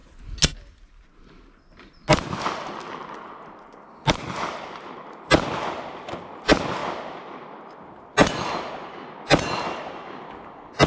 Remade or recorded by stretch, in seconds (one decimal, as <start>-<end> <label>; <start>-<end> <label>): 0.0-10.9 recorded